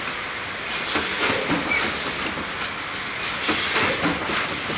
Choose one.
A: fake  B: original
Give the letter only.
B